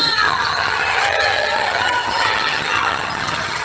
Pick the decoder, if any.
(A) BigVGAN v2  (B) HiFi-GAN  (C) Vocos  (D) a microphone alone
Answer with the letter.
B